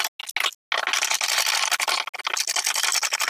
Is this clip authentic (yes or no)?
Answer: yes